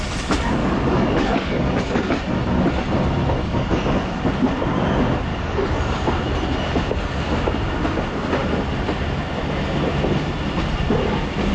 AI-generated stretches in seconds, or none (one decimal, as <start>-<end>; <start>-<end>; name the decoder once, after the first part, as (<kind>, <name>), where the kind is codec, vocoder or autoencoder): 0.6-2.2 (codec, DAC); 3.4-4.2; 5.3-5.8